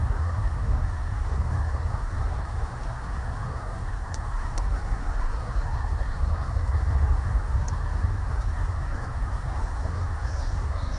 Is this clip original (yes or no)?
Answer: no